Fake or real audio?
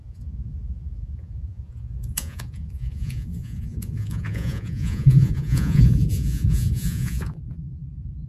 fake